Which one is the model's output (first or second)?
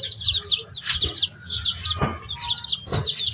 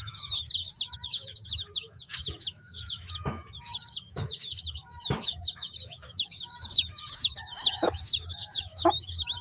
second